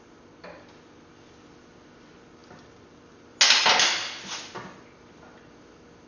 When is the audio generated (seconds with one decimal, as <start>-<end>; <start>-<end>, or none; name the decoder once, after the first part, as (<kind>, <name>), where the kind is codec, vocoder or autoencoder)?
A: none